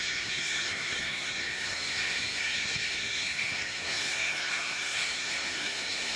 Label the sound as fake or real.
fake